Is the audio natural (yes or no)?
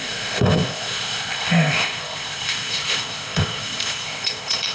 no